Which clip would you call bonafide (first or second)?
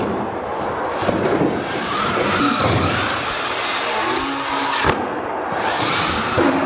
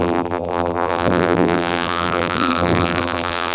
first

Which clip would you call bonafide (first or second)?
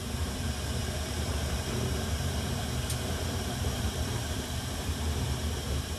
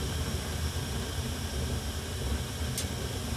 second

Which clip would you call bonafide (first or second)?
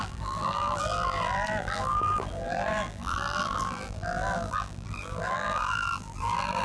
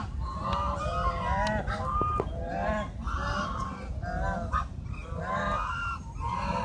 second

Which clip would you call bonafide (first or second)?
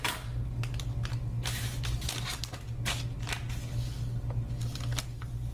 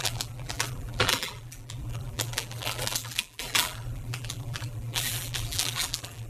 first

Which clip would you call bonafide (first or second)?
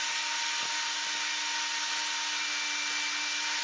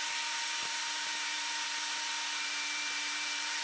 first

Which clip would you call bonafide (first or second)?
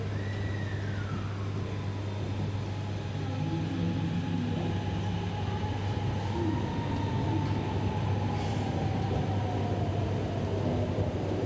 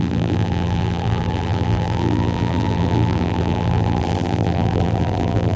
first